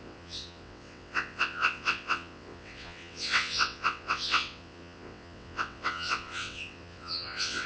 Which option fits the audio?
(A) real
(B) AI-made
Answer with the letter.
B